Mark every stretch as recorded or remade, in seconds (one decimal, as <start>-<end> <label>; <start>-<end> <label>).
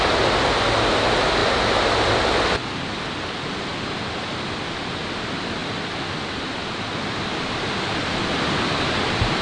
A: 0.0-9.4 recorded